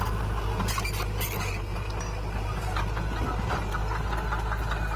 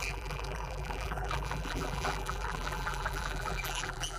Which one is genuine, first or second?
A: first